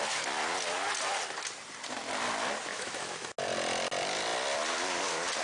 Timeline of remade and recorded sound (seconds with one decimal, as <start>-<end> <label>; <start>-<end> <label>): 0.0-2.7 recorded; 2.7-3.3 remade; 3.3-5.4 recorded